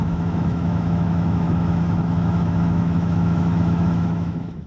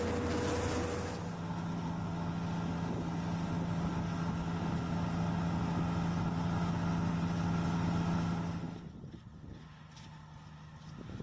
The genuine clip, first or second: second